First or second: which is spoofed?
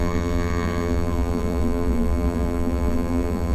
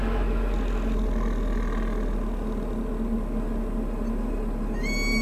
first